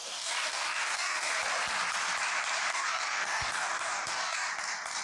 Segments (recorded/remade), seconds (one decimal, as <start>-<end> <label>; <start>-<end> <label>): 0.0-1.3 remade; 1.3-2.7 recorded; 2.7-4.5 remade; 4.5-5.0 recorded